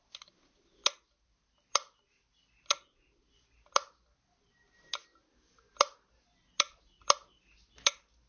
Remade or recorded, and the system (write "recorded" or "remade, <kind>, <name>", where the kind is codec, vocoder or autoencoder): recorded